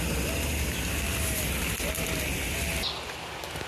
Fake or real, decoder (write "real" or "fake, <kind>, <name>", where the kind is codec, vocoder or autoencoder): real